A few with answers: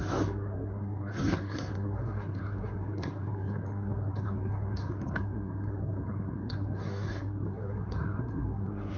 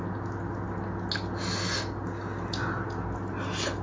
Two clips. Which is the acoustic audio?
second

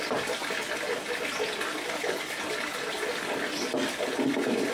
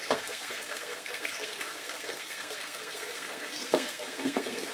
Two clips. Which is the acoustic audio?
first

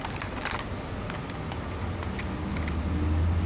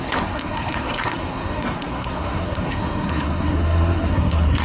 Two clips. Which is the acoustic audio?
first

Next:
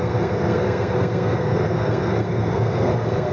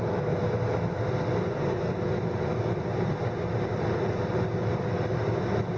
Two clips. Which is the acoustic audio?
second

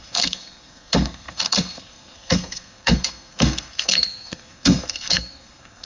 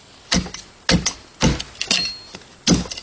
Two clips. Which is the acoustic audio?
second